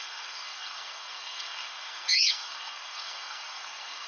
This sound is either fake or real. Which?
fake